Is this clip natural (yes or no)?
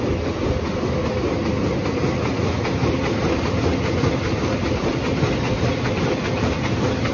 yes